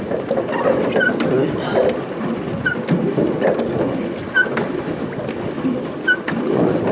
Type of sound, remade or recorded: recorded